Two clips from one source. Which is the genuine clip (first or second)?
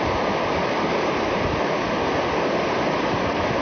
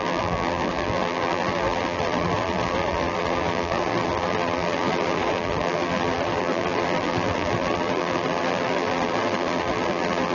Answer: first